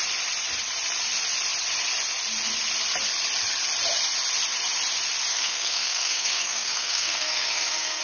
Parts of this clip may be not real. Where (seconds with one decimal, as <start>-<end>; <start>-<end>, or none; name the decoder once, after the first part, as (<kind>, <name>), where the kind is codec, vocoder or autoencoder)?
5.3-8.0 (codec, SNAC)